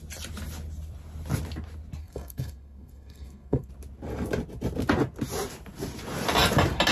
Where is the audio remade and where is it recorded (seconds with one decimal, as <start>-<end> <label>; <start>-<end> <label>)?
0.0-2.0 recorded; 2.0-3.7 remade; 3.7-6.9 recorded